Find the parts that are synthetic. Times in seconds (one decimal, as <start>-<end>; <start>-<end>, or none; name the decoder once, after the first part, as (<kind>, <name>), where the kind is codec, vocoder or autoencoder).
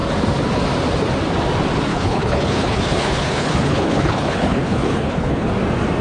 1.9-5.5 (codec, HILCodec)